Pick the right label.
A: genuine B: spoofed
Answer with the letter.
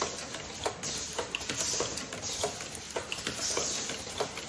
A